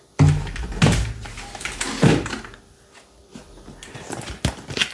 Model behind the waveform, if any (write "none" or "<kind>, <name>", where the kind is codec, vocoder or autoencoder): none